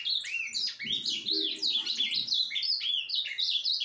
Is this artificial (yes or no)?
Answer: no